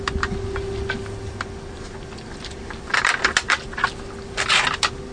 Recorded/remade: recorded